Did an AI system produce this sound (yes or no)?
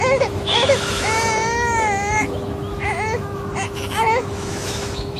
yes